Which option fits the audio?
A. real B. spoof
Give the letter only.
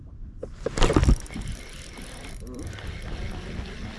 A